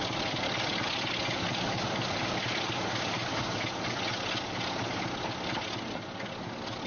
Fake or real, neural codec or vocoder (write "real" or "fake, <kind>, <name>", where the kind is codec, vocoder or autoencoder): real